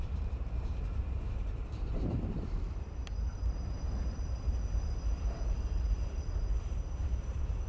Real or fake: fake